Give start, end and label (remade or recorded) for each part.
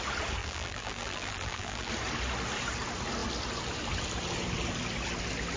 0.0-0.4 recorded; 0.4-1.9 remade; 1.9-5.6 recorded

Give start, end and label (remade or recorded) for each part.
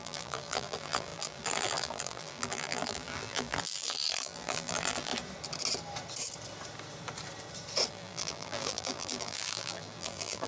0.0-5.1 remade; 5.1-7.9 recorded; 7.9-10.5 remade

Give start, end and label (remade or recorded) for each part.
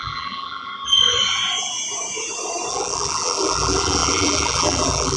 0.0-0.7 remade; 0.7-2.7 recorded; 2.7-5.2 remade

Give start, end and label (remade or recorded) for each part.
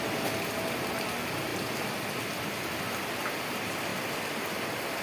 0.0-5.0 recorded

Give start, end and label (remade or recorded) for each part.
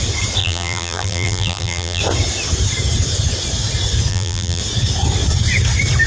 0.0-0.4 recorded; 0.4-2.0 remade; 2.0-4.1 recorded; 4.1-4.6 remade; 4.6-6.1 recorded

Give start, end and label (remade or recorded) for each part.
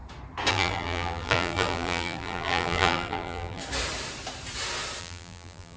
0.0-0.5 recorded; 0.5-3.6 remade; 3.6-5.0 recorded; 5.0-5.8 remade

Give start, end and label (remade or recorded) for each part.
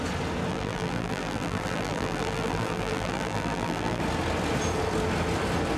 0.0-0.5 recorded; 0.5-4.0 remade; 4.0-5.8 recorded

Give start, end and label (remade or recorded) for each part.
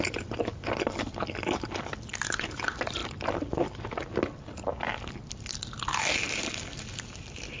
0.0-7.6 recorded